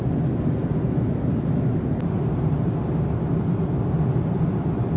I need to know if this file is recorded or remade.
recorded